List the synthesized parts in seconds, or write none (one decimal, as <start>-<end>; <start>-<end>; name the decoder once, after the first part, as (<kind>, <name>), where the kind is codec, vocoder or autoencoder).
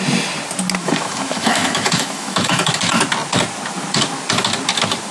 0.8-2.7 (autoencoder, DAC-VAE)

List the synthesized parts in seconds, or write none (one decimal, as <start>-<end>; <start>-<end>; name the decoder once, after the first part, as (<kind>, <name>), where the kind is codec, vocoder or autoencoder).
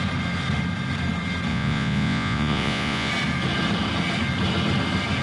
1.5-3.1 (vocoder, Vocos)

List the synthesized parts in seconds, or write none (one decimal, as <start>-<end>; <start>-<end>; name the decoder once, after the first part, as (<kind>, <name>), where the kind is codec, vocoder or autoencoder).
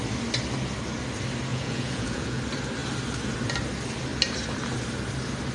1.5-2.4 (vocoder, Vocos)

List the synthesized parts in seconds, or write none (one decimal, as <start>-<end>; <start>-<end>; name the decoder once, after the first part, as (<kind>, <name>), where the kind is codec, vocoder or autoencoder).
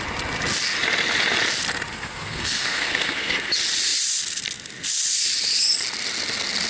1.9-3.5 (codec, SNAC)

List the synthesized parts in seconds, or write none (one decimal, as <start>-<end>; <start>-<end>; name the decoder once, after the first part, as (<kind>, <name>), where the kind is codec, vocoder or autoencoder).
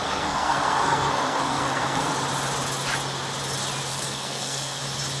0.0-2.1 (codec, SNAC); 3.9-4.8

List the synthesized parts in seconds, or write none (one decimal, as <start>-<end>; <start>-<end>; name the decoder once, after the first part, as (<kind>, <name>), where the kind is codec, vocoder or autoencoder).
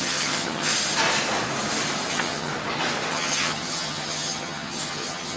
0.0-0.7 (vocoder, HiFi-GAN); 2.1-2.5; 3.1-5.4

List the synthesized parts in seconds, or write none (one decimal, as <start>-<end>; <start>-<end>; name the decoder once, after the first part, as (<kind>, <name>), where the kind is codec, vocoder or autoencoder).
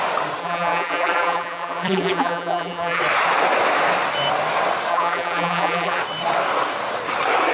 0.4-3.0 (vocoder, BigVGAN v2); 4.9-6.0